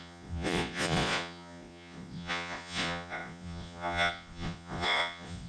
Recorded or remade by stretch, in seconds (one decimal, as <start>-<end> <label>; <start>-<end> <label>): 0.0-5.5 remade